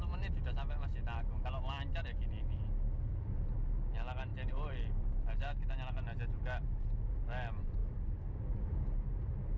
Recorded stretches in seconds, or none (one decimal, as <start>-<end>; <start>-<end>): 0.0-1.9; 2.6-4.3; 5.4-7.8; 8.6-9.6